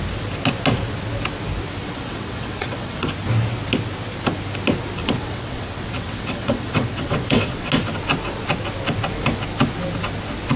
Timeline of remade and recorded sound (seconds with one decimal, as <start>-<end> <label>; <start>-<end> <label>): 0.0-1.8 recorded; 1.8-3.1 remade; 3.1-5.0 recorded; 5.0-7.7 remade; 7.7-10.6 recorded